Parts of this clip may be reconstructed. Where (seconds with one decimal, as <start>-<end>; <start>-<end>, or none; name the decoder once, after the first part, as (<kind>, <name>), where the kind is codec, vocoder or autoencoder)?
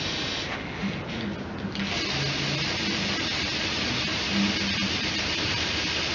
4.1-4.7 (vocoder, BigVGAN v2)